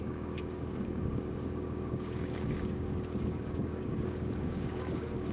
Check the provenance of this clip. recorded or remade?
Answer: remade